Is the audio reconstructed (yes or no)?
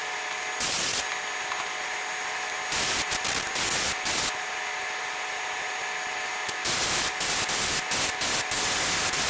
no